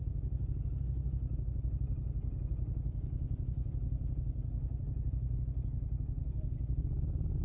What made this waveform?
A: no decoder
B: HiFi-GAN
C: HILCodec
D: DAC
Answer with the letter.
A